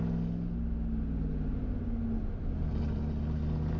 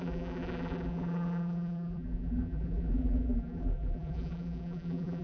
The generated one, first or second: second